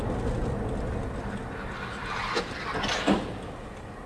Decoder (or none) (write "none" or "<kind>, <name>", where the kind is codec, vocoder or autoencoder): none